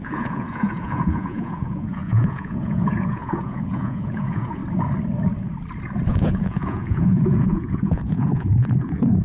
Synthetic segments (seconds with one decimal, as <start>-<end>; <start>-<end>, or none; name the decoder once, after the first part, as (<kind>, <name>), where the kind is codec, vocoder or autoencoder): 0.0-4.6 (vocoder, Vocos); 6.1-9.2